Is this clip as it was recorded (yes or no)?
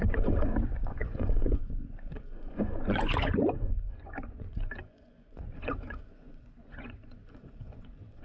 no